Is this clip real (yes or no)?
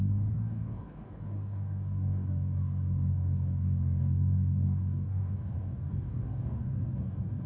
no